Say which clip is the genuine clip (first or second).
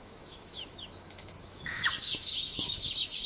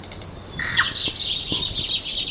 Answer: second